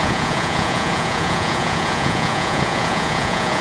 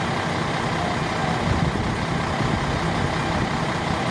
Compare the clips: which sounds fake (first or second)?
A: first